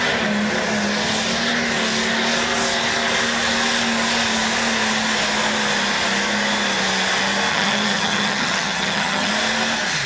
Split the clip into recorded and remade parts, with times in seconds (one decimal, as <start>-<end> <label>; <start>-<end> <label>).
0.0-7.5 recorded; 7.5-9.3 remade; 9.3-10.1 recorded